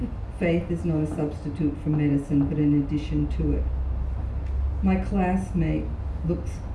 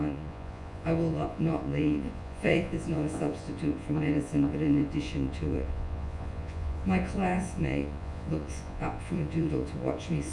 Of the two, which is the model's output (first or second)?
second